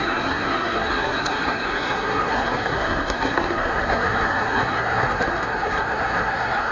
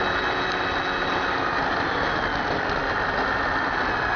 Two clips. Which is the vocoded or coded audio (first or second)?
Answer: first